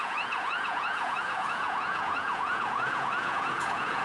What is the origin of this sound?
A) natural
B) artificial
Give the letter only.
B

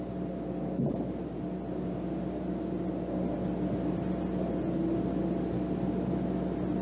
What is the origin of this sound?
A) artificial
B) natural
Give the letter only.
B